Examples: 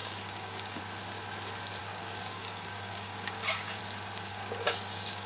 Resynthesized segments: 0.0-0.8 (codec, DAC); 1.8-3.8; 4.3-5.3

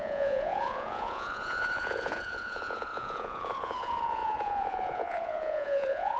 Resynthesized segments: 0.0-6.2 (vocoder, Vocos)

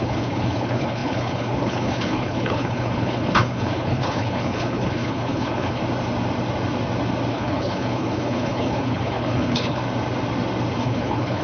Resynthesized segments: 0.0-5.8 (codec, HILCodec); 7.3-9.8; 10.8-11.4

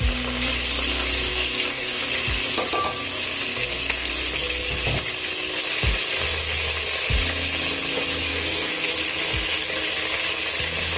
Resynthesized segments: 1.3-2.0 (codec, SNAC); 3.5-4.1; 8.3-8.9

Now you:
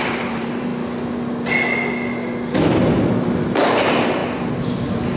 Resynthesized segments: 0.0-0.7 (vocoder, BigVGAN v2); 3.8-5.2

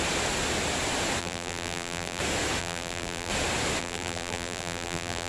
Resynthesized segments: 1.2-2.2 (vocoder, BigVGAN v2); 2.6-3.3; 3.8-5.3